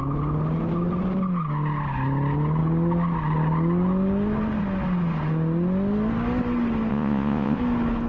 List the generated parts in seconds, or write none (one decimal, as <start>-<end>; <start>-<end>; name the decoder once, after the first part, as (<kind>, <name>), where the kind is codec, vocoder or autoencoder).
6.9-7.6 (vocoder, Vocos)